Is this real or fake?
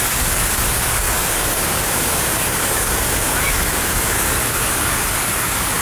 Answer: fake